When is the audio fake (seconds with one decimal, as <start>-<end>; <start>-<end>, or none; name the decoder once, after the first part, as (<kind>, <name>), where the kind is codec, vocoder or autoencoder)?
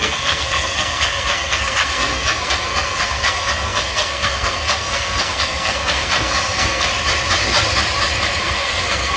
0.0-6.9 (codec, SNAC); 8.4-9.2